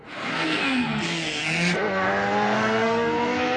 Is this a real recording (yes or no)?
no